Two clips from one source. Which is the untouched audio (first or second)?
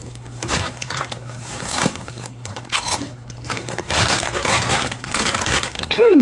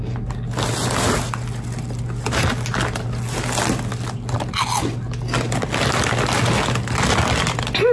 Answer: second